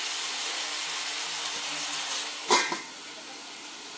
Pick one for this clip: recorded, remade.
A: recorded